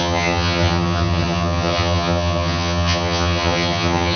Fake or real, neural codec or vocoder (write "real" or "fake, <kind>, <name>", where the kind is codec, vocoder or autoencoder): fake, vocoder, HiFi-GAN